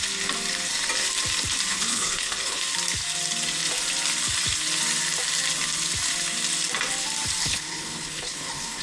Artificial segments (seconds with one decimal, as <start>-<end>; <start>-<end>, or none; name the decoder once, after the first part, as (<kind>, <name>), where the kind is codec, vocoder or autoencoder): 1.7-2.6 (codec, HILCodec); 7.4-8.8